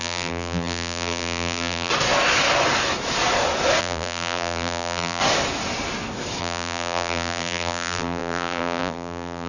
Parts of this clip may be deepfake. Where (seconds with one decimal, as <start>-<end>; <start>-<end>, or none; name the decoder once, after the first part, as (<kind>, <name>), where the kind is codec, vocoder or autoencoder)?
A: 0.0-1.9 (vocoder, BigVGAN v2); 3.8-5.2; 6.4-9.5